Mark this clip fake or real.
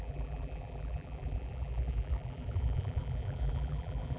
fake